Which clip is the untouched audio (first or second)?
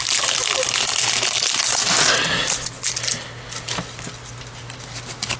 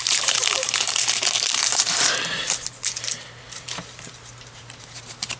first